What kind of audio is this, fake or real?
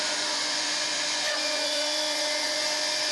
fake